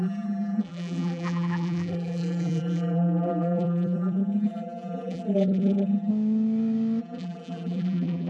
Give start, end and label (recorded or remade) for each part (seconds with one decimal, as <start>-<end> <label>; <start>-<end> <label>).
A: 0.0-6.1 remade; 6.1-7.0 recorded; 7.0-8.3 remade